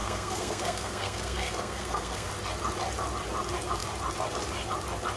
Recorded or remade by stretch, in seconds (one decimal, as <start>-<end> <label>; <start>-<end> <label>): 0.0-2.3 remade; 2.3-5.2 recorded

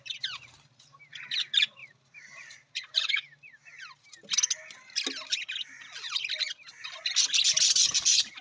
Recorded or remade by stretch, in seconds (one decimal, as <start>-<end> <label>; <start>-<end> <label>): 0.0-1.8 recorded; 1.8-3.1 remade; 3.1-8.4 recorded

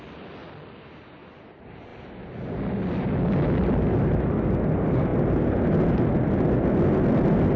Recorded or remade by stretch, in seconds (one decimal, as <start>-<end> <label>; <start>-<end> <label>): 0.0-7.6 recorded

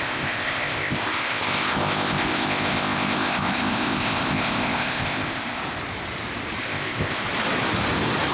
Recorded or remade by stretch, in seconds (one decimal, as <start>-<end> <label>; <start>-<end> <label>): 0.0-5.6 remade; 5.6-6.6 recorded; 6.6-7.2 remade; 7.2-8.3 recorded

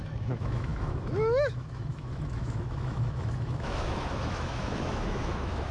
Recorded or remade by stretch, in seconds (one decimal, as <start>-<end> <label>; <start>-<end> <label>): 0.0-5.7 remade